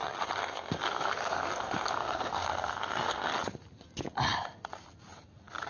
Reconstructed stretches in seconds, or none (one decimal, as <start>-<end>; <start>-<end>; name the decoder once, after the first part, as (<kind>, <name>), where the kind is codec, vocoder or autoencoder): 0.4-3.3 (codec, SNAC)